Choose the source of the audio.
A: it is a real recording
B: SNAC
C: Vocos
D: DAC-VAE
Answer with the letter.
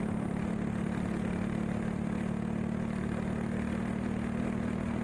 A